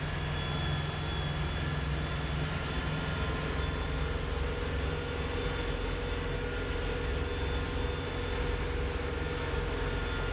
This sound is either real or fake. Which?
real